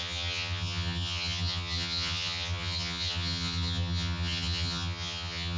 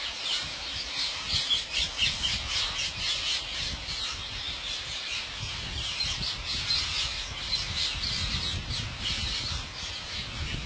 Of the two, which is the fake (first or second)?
first